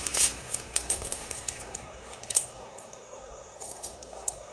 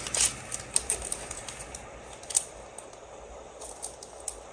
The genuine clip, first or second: second